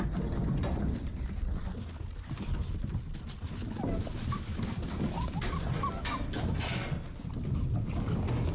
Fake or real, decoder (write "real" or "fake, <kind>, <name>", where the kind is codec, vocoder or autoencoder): real